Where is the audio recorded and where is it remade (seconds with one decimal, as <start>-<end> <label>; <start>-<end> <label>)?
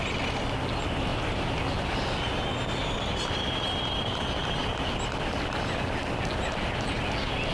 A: 0.0-7.5 recorded